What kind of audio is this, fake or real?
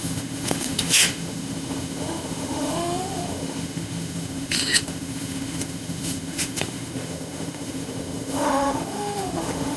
fake